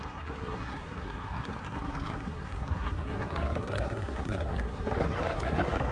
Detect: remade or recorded remade